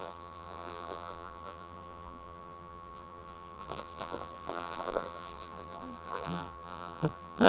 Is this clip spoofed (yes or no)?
yes